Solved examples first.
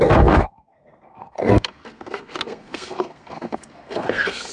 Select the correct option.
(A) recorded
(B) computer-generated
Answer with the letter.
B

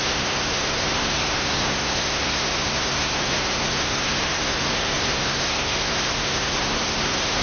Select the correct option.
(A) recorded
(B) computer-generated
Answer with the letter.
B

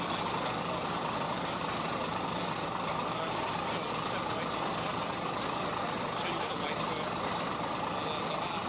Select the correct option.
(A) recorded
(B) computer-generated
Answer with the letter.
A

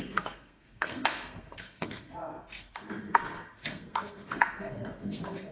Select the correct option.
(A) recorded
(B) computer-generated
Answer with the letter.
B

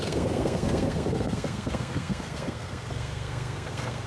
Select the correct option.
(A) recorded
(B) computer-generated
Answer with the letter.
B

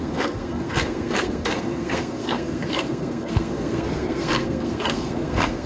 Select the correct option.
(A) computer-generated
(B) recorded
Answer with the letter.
A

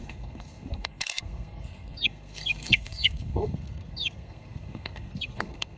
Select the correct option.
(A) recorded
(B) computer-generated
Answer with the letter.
B